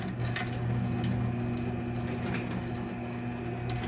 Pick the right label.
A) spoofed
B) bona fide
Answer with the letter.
B